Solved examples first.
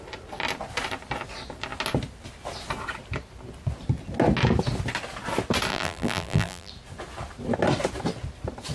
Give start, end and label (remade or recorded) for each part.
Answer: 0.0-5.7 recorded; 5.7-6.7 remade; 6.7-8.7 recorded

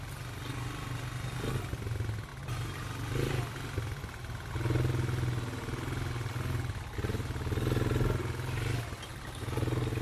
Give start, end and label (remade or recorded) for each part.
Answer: 0.0-9.1 recorded; 9.1-10.0 remade